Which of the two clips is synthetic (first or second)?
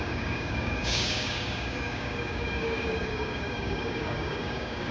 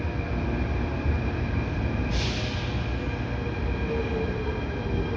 first